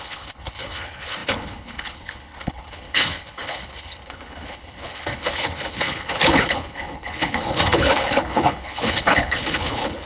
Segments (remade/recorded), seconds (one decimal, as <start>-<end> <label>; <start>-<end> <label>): 0.0-10.1 remade